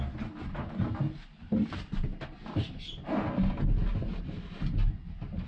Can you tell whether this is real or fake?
real